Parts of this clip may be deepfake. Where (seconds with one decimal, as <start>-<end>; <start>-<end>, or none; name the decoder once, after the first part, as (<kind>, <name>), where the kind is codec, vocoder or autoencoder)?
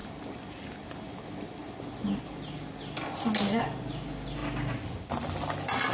none